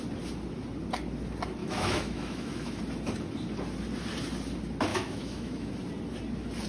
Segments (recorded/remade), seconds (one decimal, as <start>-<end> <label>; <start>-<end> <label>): 0.0-1.6 recorded; 1.6-2.8 remade; 2.8-4.9 recorded; 4.9-5.7 remade; 5.7-6.7 recorded